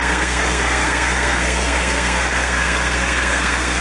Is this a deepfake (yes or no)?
yes